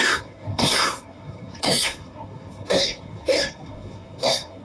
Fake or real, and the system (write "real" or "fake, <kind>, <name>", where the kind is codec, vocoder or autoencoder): fake, codec, SNAC